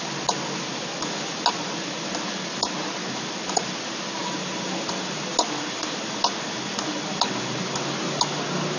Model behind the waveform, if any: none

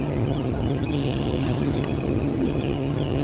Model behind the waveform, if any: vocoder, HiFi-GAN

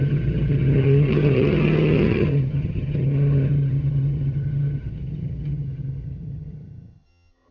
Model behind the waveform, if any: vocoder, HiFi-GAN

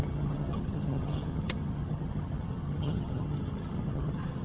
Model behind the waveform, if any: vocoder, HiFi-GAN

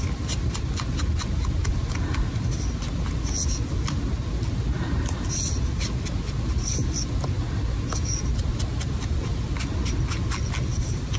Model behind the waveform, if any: none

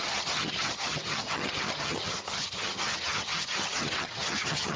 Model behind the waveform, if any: vocoder, HiFi-GAN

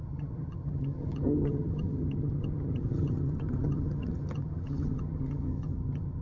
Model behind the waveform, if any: vocoder, HiFi-GAN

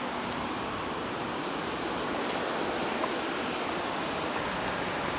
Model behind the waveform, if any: none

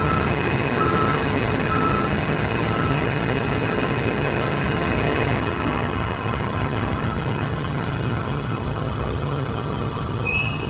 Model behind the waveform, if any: vocoder, HiFi-GAN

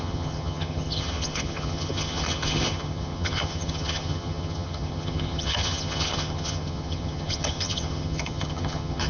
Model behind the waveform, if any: vocoder, HiFi-GAN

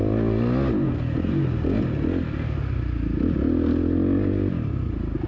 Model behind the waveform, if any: none